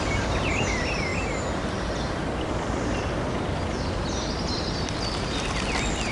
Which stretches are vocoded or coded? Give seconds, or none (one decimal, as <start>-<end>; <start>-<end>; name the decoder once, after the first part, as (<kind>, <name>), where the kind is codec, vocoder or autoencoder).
none